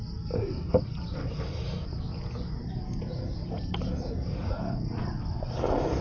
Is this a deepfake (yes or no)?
no